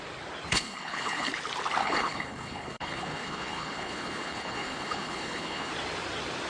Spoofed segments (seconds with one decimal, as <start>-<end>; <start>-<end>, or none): 0.5-1.3; 1.8-5.7